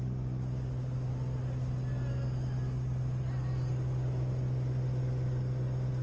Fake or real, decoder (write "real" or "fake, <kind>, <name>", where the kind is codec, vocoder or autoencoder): real